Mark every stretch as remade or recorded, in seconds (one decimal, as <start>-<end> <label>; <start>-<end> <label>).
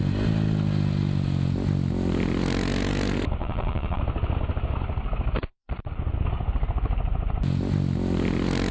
0.0-3.4 recorded; 3.4-4.0 remade; 4.0-8.7 recorded